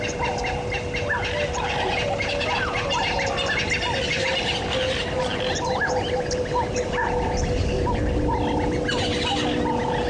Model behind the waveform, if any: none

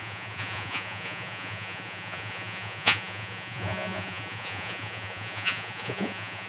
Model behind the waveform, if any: vocoder, Vocos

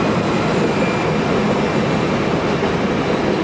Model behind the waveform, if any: none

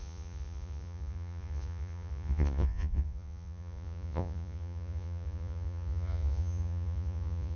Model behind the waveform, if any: vocoder, Vocos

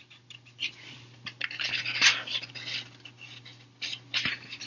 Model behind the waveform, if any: none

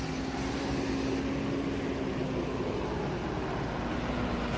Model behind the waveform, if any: none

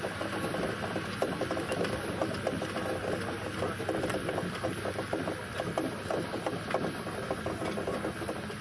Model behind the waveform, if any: none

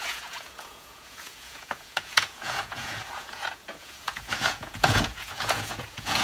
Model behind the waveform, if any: vocoder, Vocos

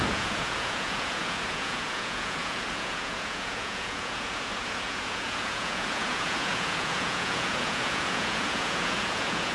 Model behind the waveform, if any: vocoder, Vocos